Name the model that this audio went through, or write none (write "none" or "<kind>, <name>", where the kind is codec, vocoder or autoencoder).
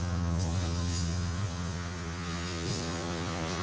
vocoder, Vocos